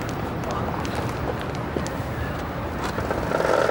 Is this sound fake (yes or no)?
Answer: no